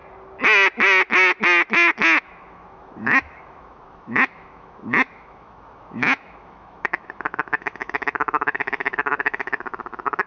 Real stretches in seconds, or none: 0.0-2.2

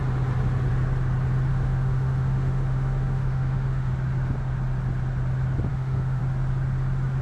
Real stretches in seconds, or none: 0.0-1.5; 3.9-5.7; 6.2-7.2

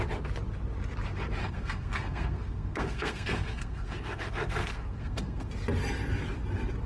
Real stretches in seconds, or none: 0.0-1.4; 5.5-6.9